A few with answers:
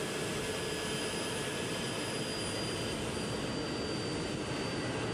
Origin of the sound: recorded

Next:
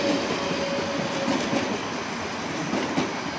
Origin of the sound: recorded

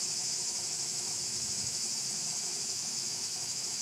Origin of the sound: remade